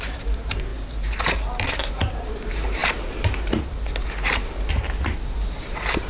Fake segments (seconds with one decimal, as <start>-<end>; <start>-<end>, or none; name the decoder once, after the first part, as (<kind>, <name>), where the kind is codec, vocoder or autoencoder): 0.0-0.7 (vocoder, BigVGAN v2); 1.5-6.1